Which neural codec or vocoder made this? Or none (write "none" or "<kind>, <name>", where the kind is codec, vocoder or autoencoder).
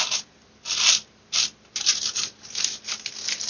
none